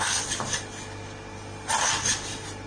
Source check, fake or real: real